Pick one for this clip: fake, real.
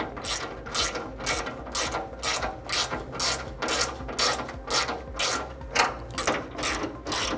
real